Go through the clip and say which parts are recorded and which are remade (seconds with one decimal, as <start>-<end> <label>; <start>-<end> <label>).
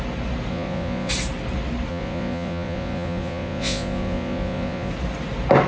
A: 0.0-0.5 recorded; 0.5-1.1 remade; 1.1-1.9 recorded; 1.9-4.9 remade; 4.9-5.7 recorded